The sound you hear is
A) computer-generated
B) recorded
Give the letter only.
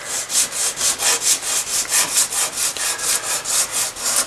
B